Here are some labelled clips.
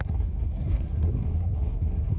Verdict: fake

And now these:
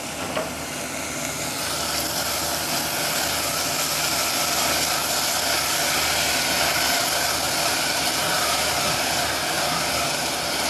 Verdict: real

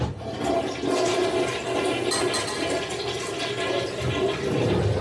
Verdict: real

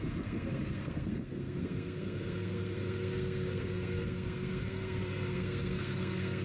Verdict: fake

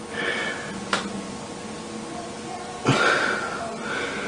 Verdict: real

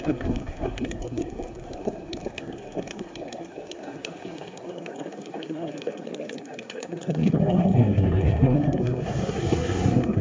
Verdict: fake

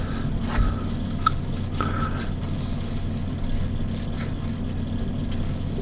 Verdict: real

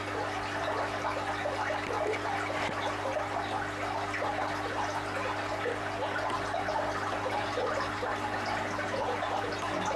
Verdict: real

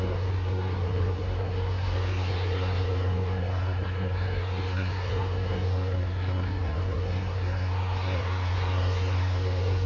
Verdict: fake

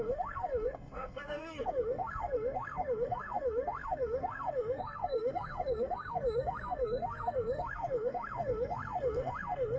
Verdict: fake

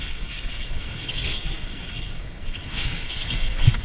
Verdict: fake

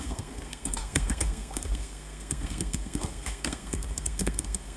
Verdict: fake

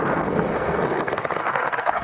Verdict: fake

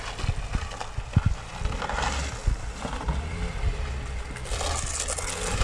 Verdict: real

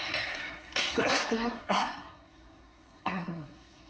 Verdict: fake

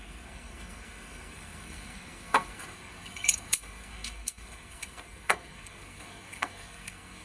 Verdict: fake